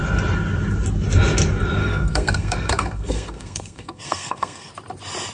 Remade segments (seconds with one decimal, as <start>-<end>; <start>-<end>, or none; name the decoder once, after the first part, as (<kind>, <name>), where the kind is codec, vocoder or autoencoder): 1.8-4.7 (codec, SNAC)